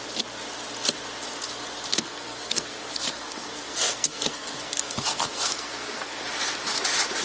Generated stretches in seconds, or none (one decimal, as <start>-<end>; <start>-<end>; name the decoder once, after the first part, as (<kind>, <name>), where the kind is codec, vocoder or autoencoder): 1.9-6.2 (codec, SNAC)